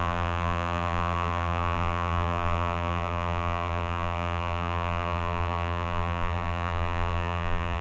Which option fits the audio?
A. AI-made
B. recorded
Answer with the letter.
A